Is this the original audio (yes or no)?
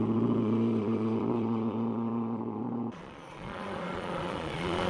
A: no